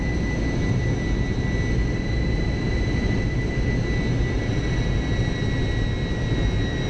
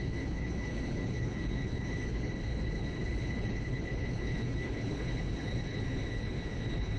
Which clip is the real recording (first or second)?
first